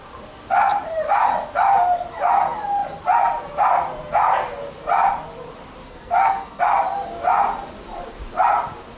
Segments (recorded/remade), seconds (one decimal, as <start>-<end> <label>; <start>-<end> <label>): 0.0-5.8 recorded; 5.8-6.6 remade; 6.6-9.0 recorded